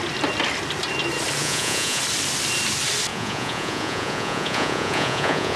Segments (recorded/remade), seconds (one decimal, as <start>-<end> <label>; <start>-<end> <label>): 0.0-1.4 recorded; 1.4-2.0 remade; 2.0-3.1 recorded; 3.1-5.6 remade